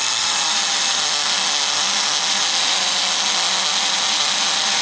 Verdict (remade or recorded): recorded